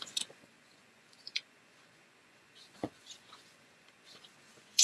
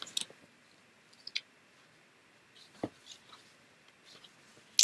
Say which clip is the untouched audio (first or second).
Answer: second